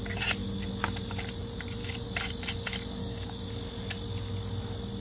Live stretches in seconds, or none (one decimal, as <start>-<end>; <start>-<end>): 0.0-3.0; 3.5-5.0